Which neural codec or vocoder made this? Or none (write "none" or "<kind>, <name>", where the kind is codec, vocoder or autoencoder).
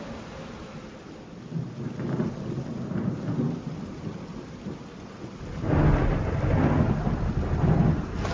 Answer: none